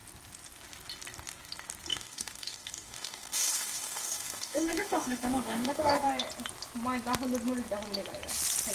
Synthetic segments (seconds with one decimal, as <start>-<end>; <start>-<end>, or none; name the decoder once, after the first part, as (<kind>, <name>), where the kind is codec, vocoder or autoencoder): 1.9-6.1 (codec, DAC)